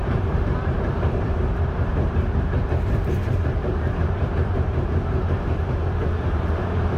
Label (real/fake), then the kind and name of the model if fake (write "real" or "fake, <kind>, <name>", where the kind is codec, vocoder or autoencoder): fake, vocoder, BigVGAN v2